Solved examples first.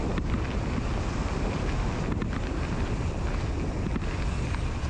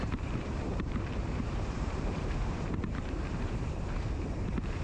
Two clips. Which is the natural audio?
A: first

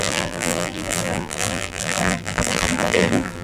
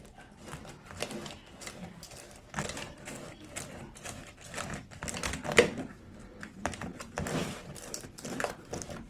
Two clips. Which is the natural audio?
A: second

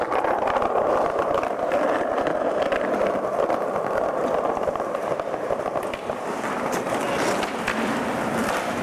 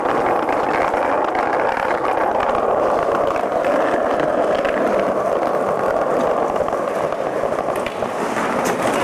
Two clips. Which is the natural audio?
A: second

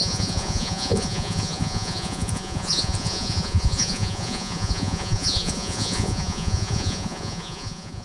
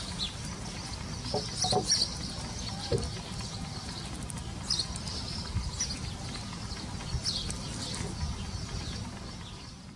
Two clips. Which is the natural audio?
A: second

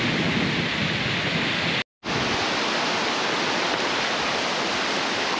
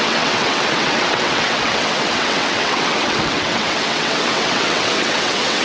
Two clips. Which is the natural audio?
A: first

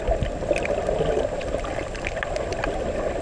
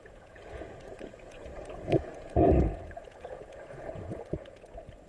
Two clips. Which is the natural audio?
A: first